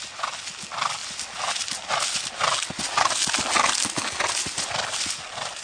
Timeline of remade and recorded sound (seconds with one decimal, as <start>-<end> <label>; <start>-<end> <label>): 0.0-5.6 recorded